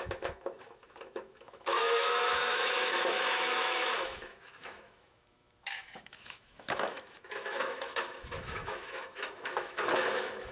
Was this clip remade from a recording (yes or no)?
yes